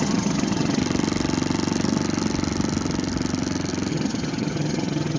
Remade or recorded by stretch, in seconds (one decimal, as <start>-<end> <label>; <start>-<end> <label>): 0.0-0.8 remade; 0.8-3.9 recorded; 3.9-5.2 remade